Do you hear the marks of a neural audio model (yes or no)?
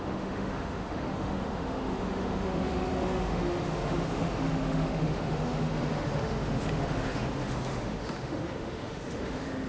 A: yes